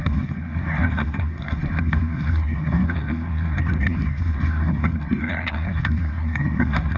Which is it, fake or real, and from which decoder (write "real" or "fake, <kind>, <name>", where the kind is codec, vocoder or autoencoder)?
fake, codec, SNAC